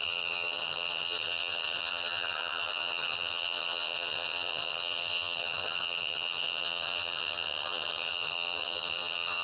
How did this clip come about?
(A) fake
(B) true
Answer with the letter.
A